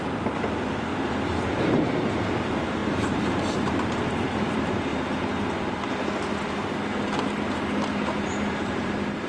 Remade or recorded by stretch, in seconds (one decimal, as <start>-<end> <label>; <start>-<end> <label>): 0.0-0.9 remade; 0.9-1.7 recorded; 1.7-4.9 remade; 4.9-8.5 recorded; 8.5-9.3 remade